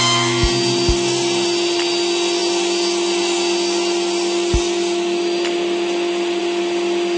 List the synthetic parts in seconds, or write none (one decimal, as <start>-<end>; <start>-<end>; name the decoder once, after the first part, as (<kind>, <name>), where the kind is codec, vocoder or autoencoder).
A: none